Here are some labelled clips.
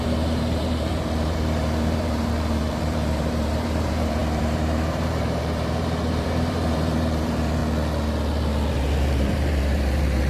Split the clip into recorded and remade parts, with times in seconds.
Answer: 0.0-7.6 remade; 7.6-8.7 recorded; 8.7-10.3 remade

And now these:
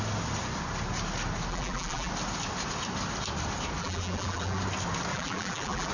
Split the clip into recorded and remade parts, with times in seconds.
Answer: 0.0-1.5 recorded; 1.5-2.1 remade; 2.1-3.8 recorded; 3.8-4.6 remade; 4.6-5.1 recorded; 5.1-5.9 remade

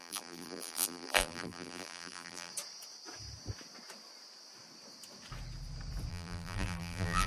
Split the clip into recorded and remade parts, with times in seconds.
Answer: 0.0-2.5 remade; 2.5-6.1 recorded; 6.1-7.3 remade